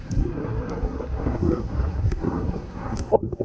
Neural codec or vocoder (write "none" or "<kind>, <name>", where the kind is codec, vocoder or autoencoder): codec, SNAC